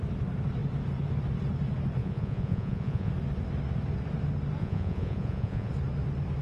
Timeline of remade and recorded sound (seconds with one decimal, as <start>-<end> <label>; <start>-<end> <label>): 0.0-2.0 recorded; 2.0-3.1 remade; 3.1-4.6 recorded; 4.6-5.7 remade; 5.7-6.4 recorded